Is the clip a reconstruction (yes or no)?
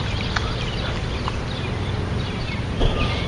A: no